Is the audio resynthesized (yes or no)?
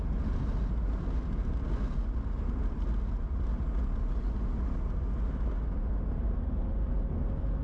no